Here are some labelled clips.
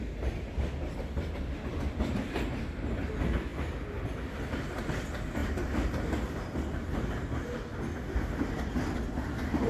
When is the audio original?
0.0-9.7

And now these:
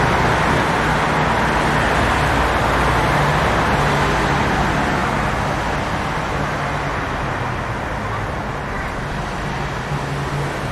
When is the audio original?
0.0-10.7

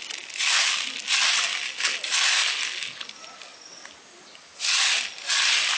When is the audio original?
0.0-5.8

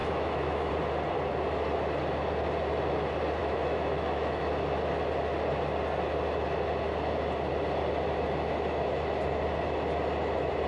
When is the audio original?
0.7-3.4; 4.4-10.7

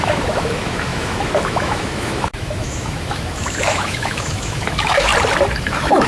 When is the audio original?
5.1-5.6

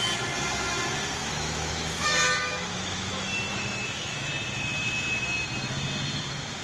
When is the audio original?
0.0-1.2; 4.3-6.6

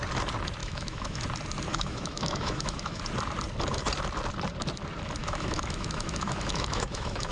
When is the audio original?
0.0-0.6; 1.2-1.7; 3.0-5.2

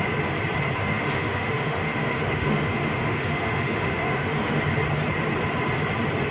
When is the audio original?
0.0-0.8; 4.6-6.3